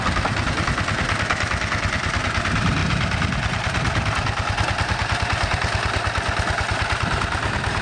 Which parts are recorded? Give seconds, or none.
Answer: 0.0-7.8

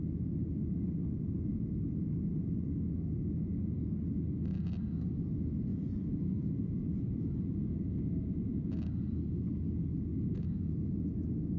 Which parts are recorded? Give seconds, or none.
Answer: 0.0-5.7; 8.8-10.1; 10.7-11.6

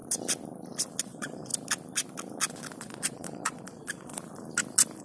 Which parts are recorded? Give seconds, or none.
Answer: 0.0-1.0; 1.5-2.8; 4.1-5.0

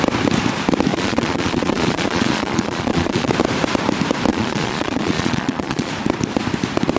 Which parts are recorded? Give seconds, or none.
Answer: 0.0-0.9; 3.3-4.3; 5.9-7.0

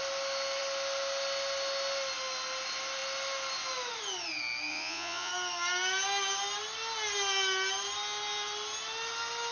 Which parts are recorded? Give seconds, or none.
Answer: 0.0-4.7; 5.3-9.5

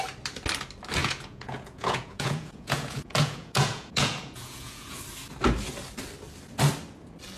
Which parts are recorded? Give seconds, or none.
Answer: 0.0-1.0; 5.0-7.4

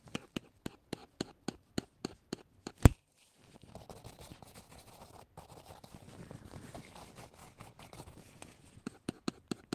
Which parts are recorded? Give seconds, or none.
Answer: 0.0-4.3; 5.0-7.4; 9.2-9.7

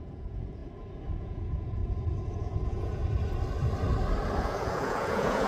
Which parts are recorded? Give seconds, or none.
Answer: 0.6-1.1; 1.8-2.3; 3.0-4.4